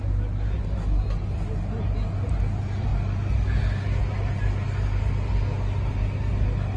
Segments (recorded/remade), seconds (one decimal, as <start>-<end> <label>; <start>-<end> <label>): 0.0-6.8 recorded